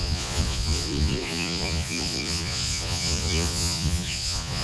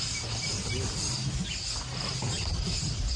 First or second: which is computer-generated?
first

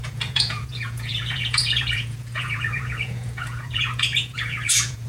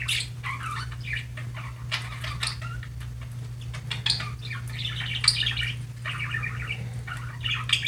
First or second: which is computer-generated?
first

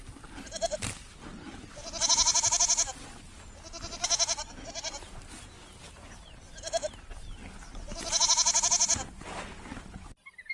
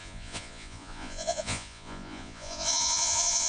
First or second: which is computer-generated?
second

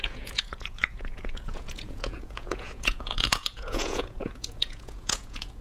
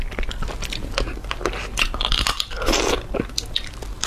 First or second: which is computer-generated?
first